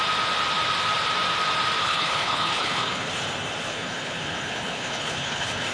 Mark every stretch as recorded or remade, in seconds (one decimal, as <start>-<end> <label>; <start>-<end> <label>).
0.0-1.8 recorded; 1.8-3.1 remade; 3.1-3.7 recorded; 3.7-5.7 remade